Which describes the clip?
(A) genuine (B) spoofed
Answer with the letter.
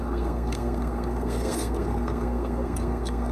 B